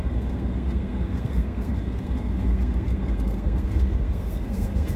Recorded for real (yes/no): no